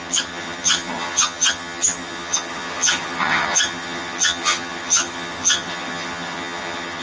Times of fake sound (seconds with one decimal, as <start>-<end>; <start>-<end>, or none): 0.0-7.0